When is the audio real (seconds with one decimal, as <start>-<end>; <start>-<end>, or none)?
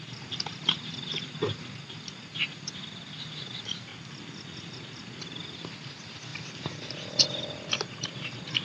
3.9-4.6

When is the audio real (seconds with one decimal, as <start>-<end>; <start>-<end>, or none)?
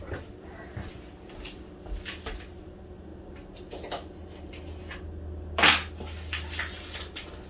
0.0-7.5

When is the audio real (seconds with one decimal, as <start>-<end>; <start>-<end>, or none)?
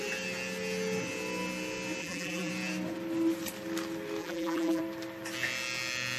0.0-2.0; 2.5-4.2; 4.8-6.2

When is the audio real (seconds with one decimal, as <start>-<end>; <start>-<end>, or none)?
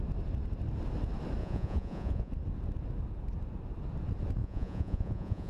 0.0-1.4; 2.3-4.4